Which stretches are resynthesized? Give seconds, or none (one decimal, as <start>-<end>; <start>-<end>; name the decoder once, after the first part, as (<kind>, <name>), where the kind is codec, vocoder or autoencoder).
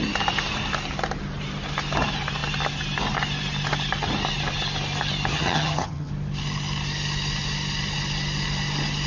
5.3-6.1 (vocoder, HiFi-GAN)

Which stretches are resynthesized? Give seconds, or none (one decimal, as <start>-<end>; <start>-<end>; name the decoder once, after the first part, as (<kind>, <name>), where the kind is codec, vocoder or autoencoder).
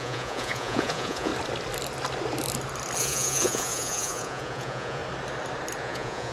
0.0-1.3 (vocoder, Vocos); 3.0-5.0; 5.8-6.3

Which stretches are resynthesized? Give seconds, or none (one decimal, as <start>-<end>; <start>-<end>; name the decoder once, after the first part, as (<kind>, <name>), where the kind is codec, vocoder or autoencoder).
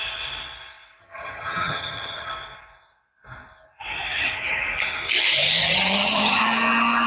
1.0-2.3 (vocoder, HiFi-GAN); 5.6-6.4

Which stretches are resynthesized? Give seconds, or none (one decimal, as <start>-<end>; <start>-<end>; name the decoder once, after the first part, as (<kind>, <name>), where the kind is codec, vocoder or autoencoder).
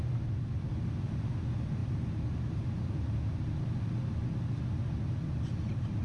none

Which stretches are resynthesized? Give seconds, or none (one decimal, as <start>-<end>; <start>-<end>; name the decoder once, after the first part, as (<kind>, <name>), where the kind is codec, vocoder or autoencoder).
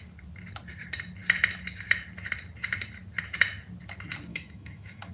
4.3-5.1 (autoencoder, DAC-VAE)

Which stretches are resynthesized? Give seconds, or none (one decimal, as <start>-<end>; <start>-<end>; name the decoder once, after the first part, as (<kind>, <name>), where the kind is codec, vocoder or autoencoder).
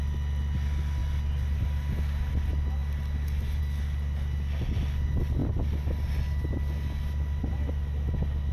none